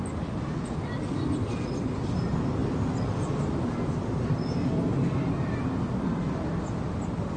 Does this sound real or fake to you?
real